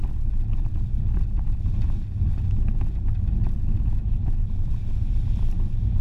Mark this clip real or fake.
real